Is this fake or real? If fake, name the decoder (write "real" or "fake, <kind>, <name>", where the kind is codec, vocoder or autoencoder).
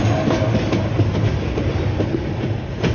real